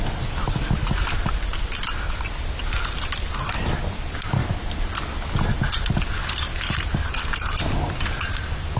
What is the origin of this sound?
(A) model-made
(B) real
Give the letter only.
B